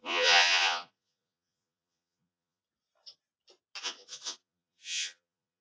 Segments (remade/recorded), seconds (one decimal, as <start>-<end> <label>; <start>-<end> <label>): 0.0-2.6 remade; 2.6-3.8 recorded; 3.8-5.6 remade